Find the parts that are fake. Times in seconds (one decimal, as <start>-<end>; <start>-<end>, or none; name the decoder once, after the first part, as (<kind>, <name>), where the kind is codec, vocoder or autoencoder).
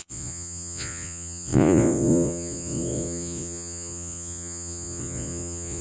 0.0-5.8 (vocoder, Vocos)